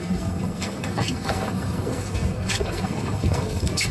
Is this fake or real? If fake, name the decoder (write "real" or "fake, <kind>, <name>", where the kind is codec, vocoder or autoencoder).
fake, codec, SNAC